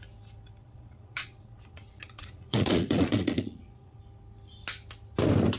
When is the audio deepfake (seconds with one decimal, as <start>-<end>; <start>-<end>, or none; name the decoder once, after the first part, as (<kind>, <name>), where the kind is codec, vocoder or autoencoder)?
0.6-4.0 (vocoder, Vocos)